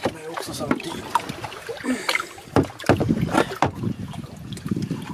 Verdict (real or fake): real